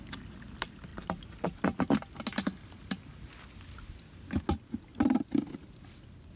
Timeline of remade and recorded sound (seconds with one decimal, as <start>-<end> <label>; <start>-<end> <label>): 0.0-0.9 recorded; 0.9-1.6 remade; 1.6-6.4 recorded

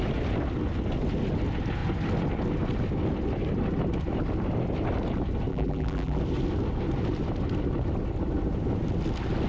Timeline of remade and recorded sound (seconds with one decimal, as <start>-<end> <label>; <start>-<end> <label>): 0.0-5.5 recorded; 5.5-6.2 remade; 6.2-9.5 recorded

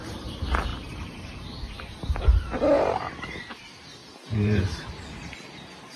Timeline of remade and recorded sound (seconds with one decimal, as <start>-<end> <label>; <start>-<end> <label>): 0.0-0.7 recorded; 0.7-1.7 remade; 1.7-4.0 recorded; 4.0-4.9 remade; 4.9-6.0 recorded

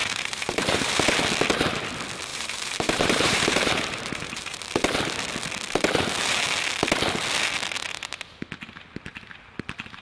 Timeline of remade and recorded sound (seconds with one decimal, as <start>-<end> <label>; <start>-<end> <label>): 0.0-0.9 remade; 0.9-2.3 recorded; 2.3-4.6 remade; 4.6-10.0 recorded

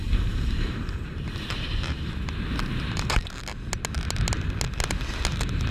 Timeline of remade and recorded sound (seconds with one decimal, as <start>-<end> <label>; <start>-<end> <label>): 0.0-3.2 remade; 3.2-5.7 recorded

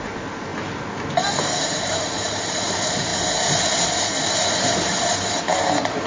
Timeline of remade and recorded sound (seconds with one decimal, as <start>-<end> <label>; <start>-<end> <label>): 0.0-0.5 remade; 0.5-1.2 recorded; 1.2-3.1 remade; 3.1-4.3 recorded; 4.3-6.1 remade

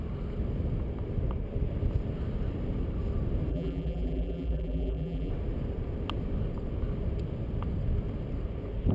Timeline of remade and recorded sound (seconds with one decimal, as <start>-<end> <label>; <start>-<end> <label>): 0.0-3.5 recorded; 3.5-5.3 remade; 5.3-8.9 recorded

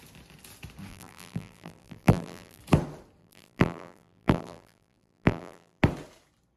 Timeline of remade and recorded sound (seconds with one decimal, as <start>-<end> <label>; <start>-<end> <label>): 0.0-0.9 recorded; 0.9-2.6 remade; 2.6-3.2 recorded; 3.2-5.8 remade; 5.8-6.6 recorded